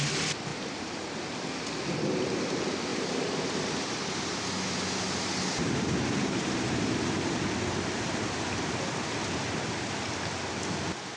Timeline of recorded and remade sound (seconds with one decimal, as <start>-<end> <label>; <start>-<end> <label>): 0.0-0.5 recorded; 0.5-1.2 remade; 1.2-2.9 recorded; 2.9-7.4 remade; 7.4-11.2 recorded